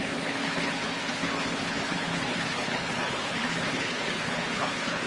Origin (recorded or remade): remade